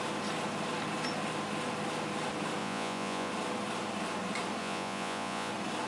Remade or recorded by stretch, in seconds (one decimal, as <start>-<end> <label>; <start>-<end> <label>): 0.0-2.6 recorded; 2.6-3.3 remade; 3.3-4.6 recorded; 4.6-5.5 remade; 5.5-5.9 recorded